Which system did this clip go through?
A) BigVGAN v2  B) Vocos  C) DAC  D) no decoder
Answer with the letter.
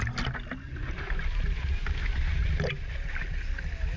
D